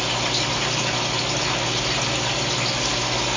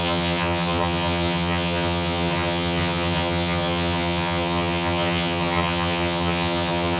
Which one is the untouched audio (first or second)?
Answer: first